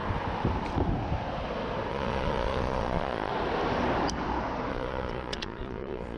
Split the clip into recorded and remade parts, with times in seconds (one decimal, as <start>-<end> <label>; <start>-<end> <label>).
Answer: 0.0-1.9 recorded; 1.9-3.3 remade; 3.3-4.7 recorded; 4.7-6.2 remade